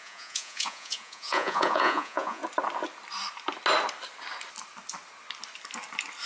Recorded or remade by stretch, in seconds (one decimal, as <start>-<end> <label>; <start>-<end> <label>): 0.0-2.4 remade; 2.4-6.3 recorded